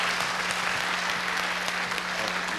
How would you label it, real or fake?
real